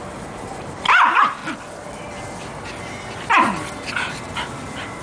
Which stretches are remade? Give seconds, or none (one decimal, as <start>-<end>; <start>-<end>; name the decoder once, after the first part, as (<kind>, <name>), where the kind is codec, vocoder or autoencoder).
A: 0.0-1.4 (vocoder, BigVGAN v2); 4.4-5.0